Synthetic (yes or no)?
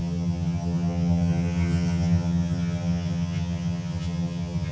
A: yes